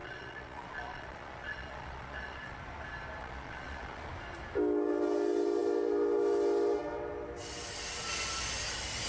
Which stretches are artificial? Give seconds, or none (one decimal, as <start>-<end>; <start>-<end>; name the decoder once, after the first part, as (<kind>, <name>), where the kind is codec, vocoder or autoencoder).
0.0-2.6 (vocoder, Vocos); 3.2-4.1